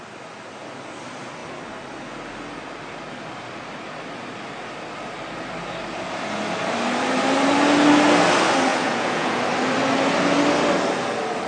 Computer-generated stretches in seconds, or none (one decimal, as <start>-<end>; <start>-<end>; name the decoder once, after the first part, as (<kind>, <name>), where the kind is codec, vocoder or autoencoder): 8.7-9.4 (vocoder, Vocos)